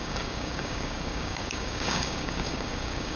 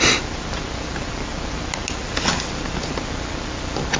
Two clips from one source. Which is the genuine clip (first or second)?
second